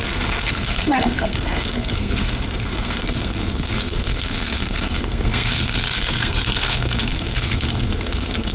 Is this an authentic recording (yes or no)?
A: no